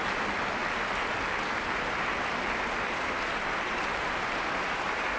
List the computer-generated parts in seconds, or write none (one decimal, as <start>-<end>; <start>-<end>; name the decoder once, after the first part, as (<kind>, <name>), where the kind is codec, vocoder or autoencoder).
none